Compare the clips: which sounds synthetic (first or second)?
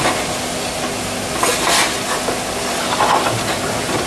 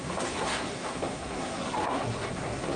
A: second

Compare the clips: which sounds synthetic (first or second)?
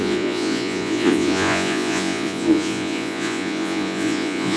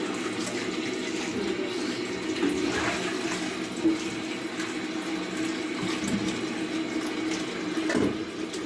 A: first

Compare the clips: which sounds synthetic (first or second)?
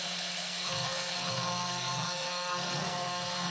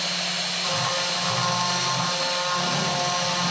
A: first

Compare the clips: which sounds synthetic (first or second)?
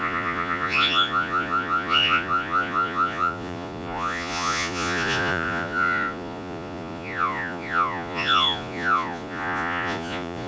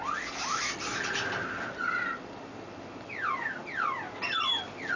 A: first